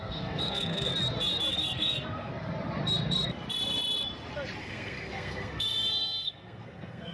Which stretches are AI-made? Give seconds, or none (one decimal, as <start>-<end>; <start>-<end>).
0.0-0.9; 1.5-2.3; 4.6-7.1